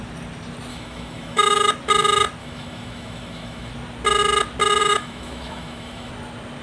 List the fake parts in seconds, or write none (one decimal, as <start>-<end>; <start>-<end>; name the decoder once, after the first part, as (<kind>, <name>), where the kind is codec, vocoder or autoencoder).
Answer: 0.7-1.7 (autoencoder, DAC-VAE); 2.4-3.7; 4.8-6.1